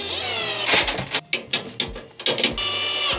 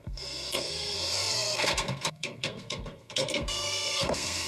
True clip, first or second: first